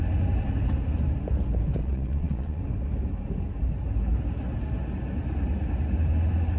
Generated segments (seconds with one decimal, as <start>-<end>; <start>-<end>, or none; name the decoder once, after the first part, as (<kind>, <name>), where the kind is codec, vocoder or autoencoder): 1.8-2.6 (vocoder, Vocos)